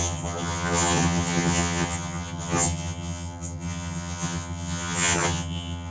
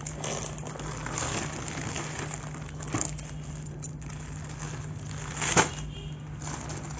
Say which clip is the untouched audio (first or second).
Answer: second